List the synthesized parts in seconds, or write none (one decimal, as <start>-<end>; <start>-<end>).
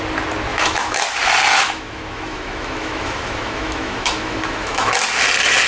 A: 0.5-1.0; 1.5-4.9